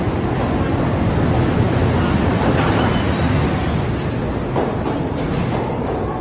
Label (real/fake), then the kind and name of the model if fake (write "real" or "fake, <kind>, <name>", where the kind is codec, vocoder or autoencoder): real